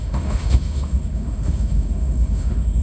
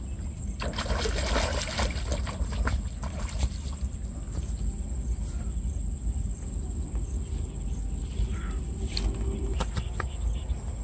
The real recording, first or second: second